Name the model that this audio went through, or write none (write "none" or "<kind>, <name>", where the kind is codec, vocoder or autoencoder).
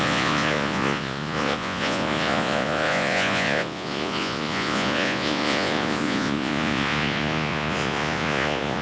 vocoder, Vocos